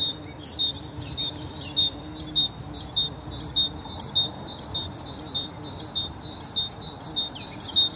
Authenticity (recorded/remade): recorded